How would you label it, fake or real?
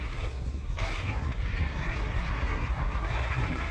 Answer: fake